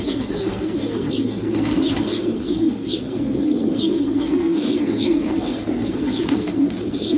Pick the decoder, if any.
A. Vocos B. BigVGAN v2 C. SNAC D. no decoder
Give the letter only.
C